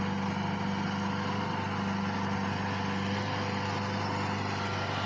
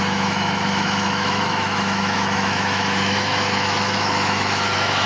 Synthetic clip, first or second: second